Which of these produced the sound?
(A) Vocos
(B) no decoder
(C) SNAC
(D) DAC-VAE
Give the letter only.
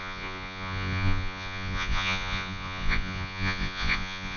A